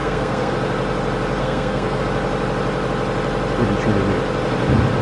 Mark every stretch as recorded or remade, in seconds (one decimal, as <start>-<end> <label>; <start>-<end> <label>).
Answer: 0.0-0.5 remade; 0.5-1.4 recorded; 1.4-2.0 remade; 2.0-5.0 recorded